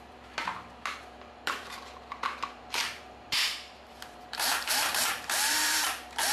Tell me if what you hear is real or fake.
fake